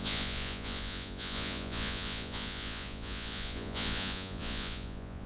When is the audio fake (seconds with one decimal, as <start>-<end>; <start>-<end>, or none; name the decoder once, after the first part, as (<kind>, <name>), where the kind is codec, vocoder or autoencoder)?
0.0-5.3 (vocoder, Vocos)